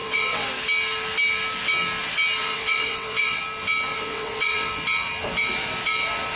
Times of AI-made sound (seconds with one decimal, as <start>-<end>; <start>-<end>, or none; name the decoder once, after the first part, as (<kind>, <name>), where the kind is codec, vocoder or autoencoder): 0.0-0.5 (vocoder, WaveNeXt); 2.4-3.4; 3.9-4.7